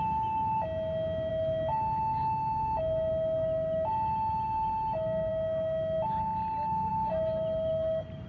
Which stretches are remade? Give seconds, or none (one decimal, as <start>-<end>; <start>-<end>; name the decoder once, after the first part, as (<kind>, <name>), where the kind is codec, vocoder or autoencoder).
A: none